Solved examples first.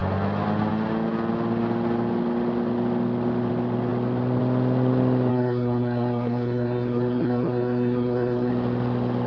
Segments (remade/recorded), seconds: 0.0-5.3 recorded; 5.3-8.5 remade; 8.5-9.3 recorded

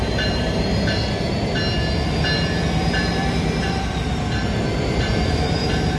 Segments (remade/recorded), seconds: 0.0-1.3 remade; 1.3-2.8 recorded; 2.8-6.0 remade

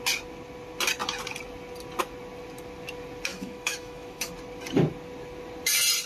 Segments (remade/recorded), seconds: 0.0-3.3 recorded; 3.3-4.3 remade; 4.3-6.0 recorded

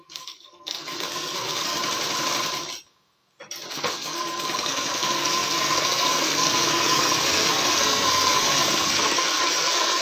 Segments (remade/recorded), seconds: 0.0-1.8 remade; 1.8-3.7 recorded; 3.7-10.0 remade

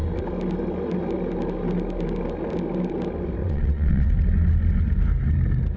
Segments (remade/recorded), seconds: 0.0-3.4 recorded; 3.4-4.1 remade; 4.1-5.8 recorded